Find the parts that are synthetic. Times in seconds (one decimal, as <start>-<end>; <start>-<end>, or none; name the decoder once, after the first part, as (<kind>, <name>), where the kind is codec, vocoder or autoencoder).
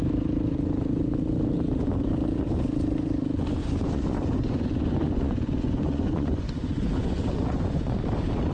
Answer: 3.6-8.0 (vocoder, Vocos)